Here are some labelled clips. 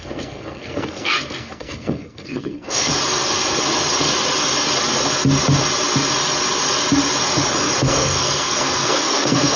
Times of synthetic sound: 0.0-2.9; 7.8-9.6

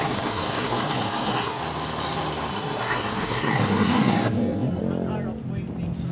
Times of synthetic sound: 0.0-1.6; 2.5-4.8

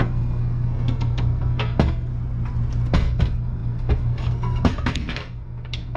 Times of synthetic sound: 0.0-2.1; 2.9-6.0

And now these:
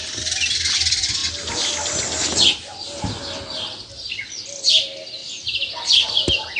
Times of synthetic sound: none

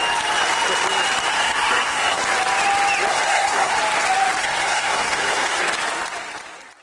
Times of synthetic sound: 1.3-2.2; 3.1-3.8; 4.4-5.6